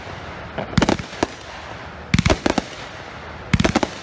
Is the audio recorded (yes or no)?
yes